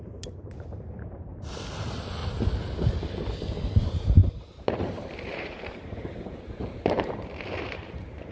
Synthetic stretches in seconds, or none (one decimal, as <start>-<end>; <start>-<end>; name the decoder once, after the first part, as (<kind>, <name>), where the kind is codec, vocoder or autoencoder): 0.0-1.3 (vocoder, BigVGAN v2); 1.8-2.2; 3.8-8.3

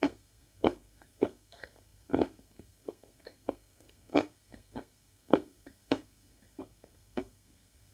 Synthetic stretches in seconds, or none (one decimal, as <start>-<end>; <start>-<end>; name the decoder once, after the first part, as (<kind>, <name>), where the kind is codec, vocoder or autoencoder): 0.0-7.9 (codec, SNAC)